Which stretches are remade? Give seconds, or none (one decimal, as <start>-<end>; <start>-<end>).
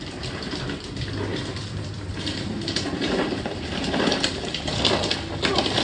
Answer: 1.3-4.8